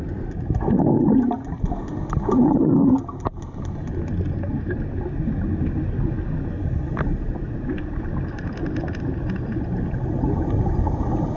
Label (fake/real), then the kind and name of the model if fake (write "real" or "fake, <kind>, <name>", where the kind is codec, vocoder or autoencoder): real